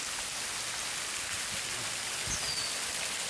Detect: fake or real real